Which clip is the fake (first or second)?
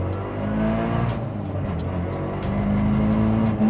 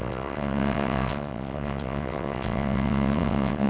second